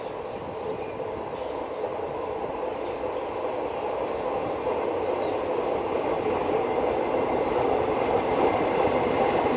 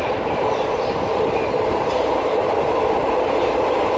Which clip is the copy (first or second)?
second